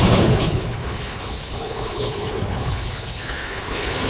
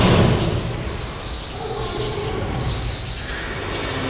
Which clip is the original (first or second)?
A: second